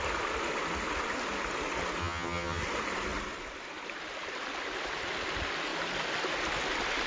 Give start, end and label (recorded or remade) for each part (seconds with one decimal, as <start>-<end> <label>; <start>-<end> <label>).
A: 0.0-2.0 recorded; 2.0-2.6 remade; 2.6-7.1 recorded